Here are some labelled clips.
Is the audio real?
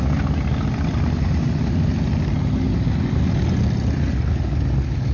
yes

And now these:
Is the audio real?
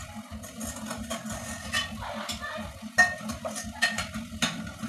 yes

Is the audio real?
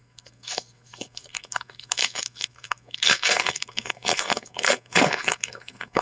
no